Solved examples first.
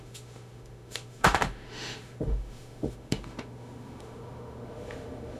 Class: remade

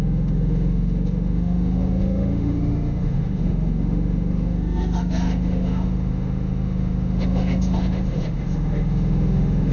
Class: remade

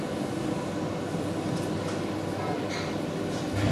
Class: recorded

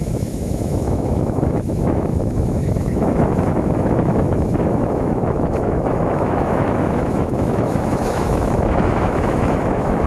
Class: remade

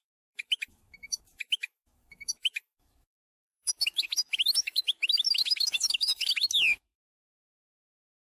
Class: remade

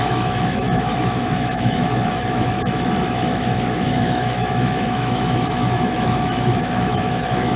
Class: remade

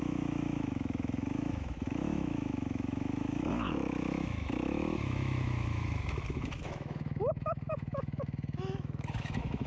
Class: remade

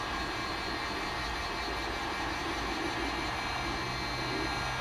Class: recorded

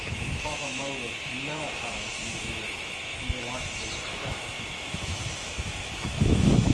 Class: remade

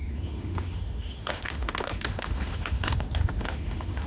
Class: remade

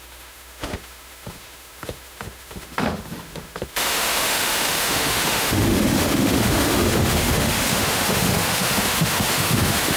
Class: remade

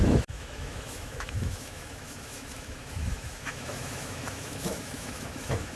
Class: remade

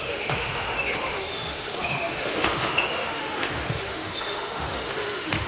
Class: remade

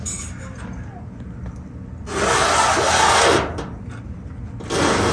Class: recorded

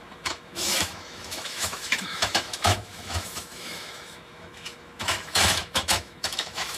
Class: remade